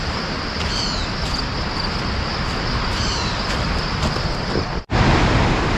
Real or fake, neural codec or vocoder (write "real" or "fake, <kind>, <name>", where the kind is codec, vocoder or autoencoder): real